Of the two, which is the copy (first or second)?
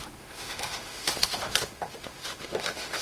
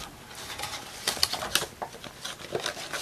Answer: first